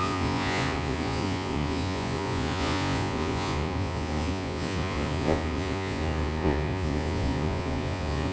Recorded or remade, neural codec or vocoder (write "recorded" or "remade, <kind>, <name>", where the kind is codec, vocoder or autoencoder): remade, vocoder, Vocos